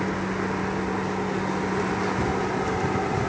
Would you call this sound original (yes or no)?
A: yes